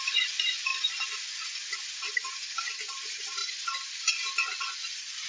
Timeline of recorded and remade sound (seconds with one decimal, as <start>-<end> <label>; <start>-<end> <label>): 0.0-5.3 recorded